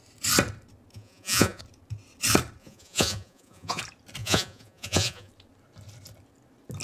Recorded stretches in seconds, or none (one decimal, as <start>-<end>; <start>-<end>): 0.0-0.9; 1.6-2.6; 3.8-4.2; 5.3-6.8